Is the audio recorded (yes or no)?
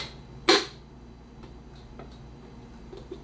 yes